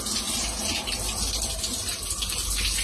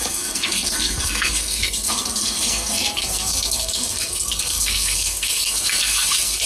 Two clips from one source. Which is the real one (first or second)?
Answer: first